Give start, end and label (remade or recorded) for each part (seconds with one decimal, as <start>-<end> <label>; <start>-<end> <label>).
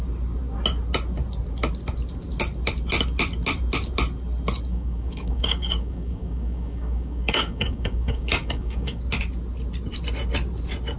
0.0-4.7 recorded; 4.7-9.0 remade; 9.0-11.0 recorded